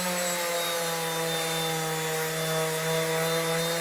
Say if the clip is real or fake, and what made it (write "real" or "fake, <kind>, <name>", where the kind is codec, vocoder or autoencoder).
real